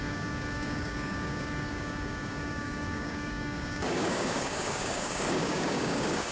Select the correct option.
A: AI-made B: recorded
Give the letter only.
A